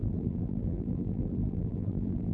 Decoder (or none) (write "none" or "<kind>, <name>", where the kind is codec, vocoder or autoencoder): vocoder, BigVGAN v2